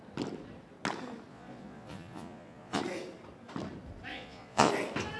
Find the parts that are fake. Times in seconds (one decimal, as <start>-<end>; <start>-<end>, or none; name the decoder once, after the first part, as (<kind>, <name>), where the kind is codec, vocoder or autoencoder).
1.3-2.8 (vocoder, Vocos); 4.1-4.7